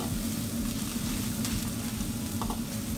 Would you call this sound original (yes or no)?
yes